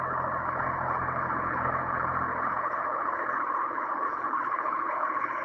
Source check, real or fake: fake